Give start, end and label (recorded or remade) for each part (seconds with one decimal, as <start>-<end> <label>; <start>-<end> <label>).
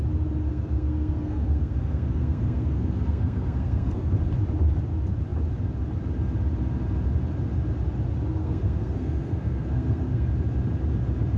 0.0-0.5 recorded; 0.5-4.1 remade; 4.1-8.4 recorded; 8.4-10.3 remade; 10.3-11.4 recorded